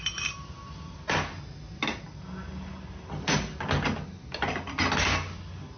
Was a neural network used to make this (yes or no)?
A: no